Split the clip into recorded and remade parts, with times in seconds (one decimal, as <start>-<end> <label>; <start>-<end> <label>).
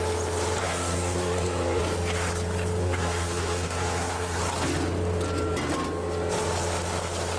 0.0-0.6 recorded; 0.6-1.8 remade; 1.8-2.8 recorded; 2.8-4.4 remade; 4.4-7.4 recorded